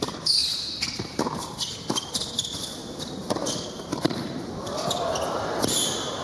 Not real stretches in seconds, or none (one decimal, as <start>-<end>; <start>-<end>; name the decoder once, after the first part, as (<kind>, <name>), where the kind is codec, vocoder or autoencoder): 0.4-2.1 (vocoder, BigVGAN v2); 2.8-5.0